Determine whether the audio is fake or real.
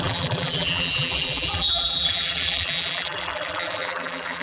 fake